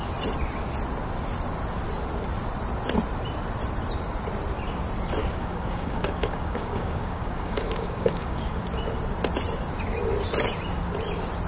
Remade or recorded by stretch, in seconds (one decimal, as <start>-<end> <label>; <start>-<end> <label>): 0.0-5.2 recorded; 5.2-8.6 remade; 8.6-11.5 recorded